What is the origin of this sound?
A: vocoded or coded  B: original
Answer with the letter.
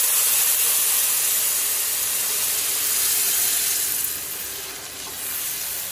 B